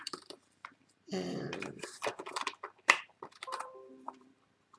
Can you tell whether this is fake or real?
fake